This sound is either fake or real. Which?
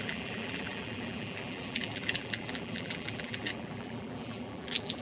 fake